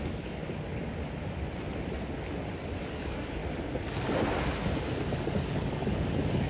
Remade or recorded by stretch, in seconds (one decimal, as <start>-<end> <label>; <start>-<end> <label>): 0.0-0.4 remade; 0.4-2.9 recorded; 2.9-3.4 remade; 3.4-5.0 recorded; 5.0-6.5 remade